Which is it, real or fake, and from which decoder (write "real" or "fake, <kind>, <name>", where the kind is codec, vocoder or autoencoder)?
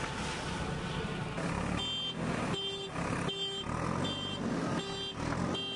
real